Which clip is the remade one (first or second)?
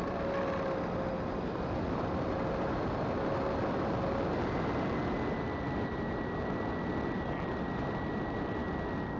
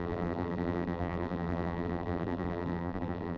second